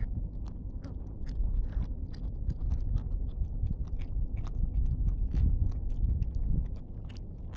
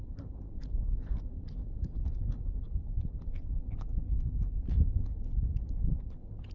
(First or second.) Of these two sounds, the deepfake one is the second